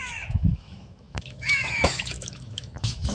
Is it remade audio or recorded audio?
remade